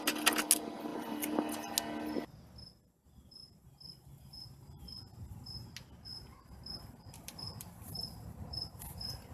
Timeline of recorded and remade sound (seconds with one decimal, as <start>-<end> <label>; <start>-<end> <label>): 0.0-0.9 recorded; 0.9-1.5 remade; 1.5-6.1 recorded; 6.1-8.4 remade; 8.4-9.3 recorded